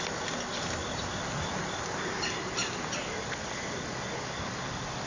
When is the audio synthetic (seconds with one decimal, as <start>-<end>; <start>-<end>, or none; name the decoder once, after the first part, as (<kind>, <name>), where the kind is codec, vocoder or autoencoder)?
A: none